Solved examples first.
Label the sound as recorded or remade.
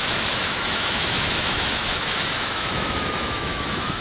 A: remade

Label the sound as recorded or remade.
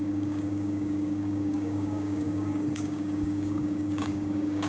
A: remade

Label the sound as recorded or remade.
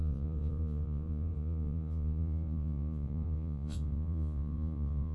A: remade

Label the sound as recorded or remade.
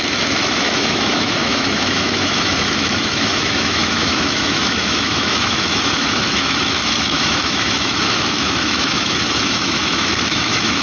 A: remade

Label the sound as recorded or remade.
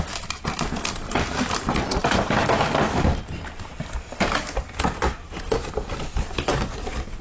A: recorded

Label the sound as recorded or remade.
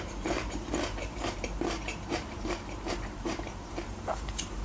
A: remade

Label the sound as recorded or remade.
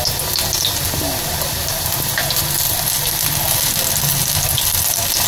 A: recorded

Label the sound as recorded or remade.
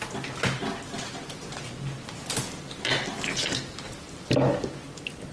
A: recorded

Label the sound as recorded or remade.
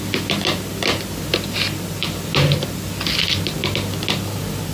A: recorded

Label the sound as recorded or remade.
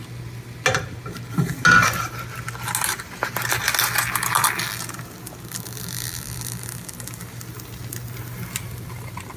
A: recorded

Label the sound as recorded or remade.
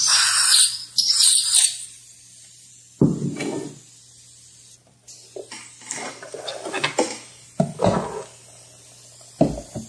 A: recorded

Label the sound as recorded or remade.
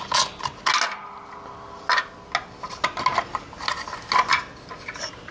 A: recorded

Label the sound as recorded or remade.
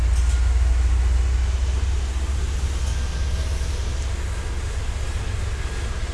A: recorded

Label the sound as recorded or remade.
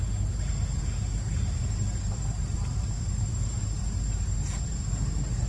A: remade